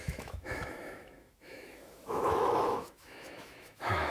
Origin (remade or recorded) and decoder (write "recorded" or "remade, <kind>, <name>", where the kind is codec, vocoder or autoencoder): remade, autoencoder, DAC-VAE